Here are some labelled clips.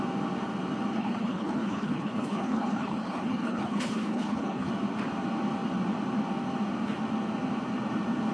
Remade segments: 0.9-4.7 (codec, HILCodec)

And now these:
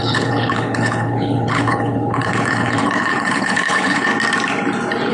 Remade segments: 0.0-4.1 (codec, HILCodec)

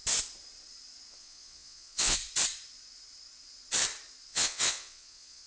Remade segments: 1.1-2.2 (vocoder, WaveNeXt); 4.3-5.5

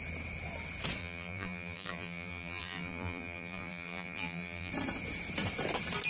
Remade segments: 1.0-4.7 (vocoder, BigVGAN v2)

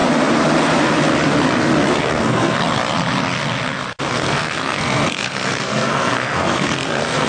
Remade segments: 2.0-2.6 (codec, SNAC); 4.1-7.3

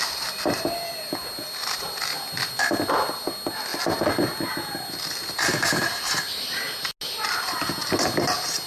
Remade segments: none

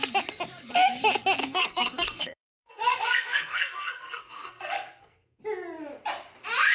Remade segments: 1.4-5.4 (codec, SNAC)